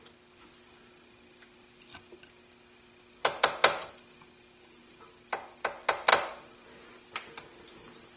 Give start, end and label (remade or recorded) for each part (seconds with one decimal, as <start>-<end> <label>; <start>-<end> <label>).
0.0-8.2 recorded